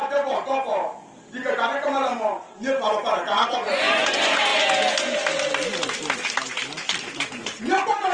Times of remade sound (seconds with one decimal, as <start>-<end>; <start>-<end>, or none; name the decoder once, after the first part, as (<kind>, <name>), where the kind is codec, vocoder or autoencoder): 3.5-4.5 (vocoder, Vocos); 7.3-8.1